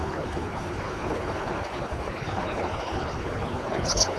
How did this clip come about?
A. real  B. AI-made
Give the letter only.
B